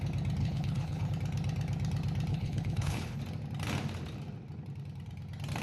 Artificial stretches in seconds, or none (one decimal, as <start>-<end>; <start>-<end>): 0.4-1.1; 2.3-3.2